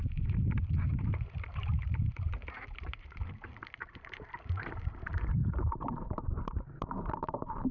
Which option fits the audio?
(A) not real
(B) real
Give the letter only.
A